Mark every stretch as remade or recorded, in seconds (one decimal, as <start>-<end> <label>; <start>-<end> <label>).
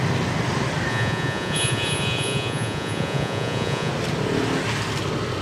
0.0-0.9 recorded; 0.9-3.9 remade; 3.9-5.4 recorded